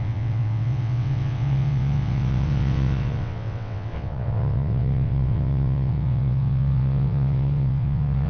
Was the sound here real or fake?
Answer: fake